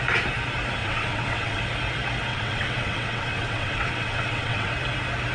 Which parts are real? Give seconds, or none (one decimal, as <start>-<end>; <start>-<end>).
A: 0.0-0.8; 1.6-2.3; 4.7-5.3